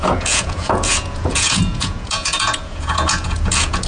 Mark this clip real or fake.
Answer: fake